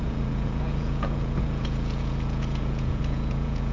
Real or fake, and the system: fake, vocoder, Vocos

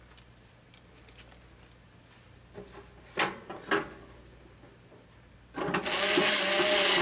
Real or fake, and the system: real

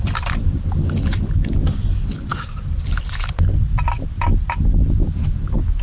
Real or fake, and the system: fake, vocoder, BigVGAN v2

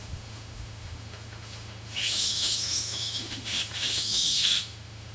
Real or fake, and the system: fake, autoencoder, DAC-VAE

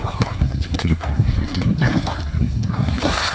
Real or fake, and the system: fake, codec, SNAC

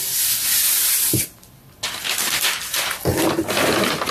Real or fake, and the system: real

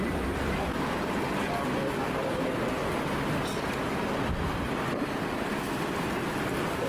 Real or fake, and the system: fake, vocoder, BigVGAN v2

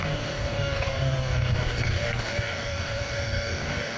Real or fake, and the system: fake, codec, DAC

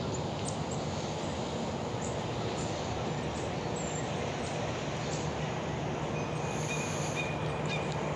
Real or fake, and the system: real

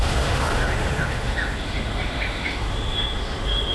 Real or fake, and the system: fake, autoencoder, DAC-VAE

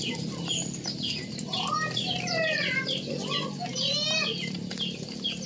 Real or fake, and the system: fake, vocoder, BigVGAN v2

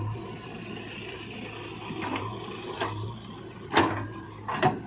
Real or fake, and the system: real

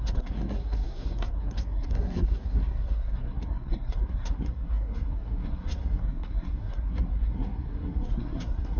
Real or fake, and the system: fake, codec, SNAC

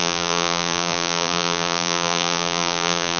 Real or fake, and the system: fake, vocoder, BigVGAN v2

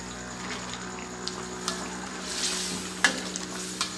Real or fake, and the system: real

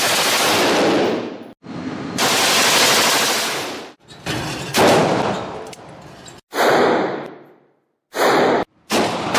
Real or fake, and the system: real